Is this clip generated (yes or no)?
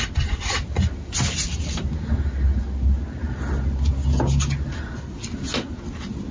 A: no